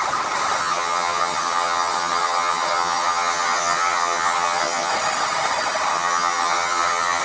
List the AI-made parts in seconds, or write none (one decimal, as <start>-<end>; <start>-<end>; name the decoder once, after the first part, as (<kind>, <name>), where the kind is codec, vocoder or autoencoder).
0.6-4.9 (vocoder, HiFi-GAN); 5.9-7.2